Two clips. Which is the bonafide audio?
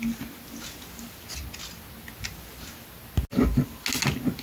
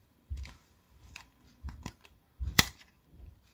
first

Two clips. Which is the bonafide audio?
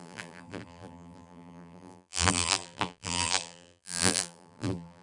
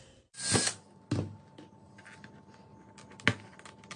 second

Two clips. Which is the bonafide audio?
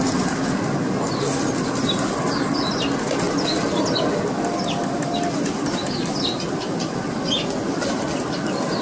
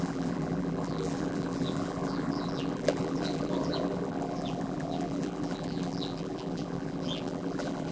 first